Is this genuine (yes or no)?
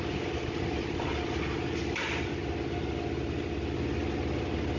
yes